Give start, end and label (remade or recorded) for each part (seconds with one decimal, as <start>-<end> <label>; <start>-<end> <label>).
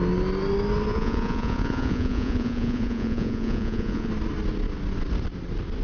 0.0-0.9 recorded; 0.9-4.1 remade; 4.1-5.8 recorded